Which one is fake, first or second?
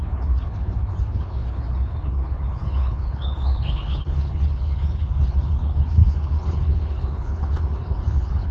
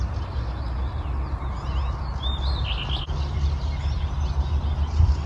first